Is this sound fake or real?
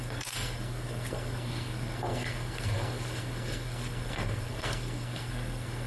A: fake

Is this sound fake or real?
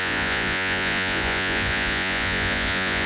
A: fake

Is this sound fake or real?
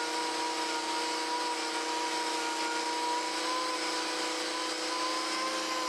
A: real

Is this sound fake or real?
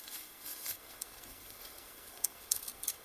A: fake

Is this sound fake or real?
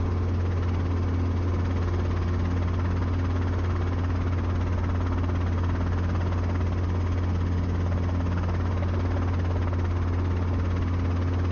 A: real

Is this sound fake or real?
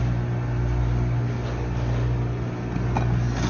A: real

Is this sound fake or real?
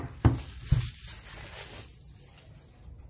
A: real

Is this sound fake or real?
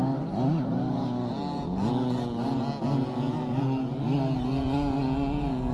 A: real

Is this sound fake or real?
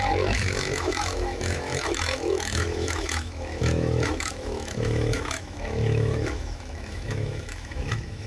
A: fake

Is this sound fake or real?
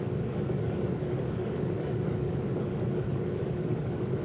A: fake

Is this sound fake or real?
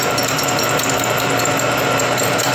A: fake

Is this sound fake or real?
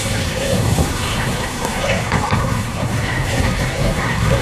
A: fake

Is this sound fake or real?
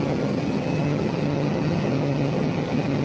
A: fake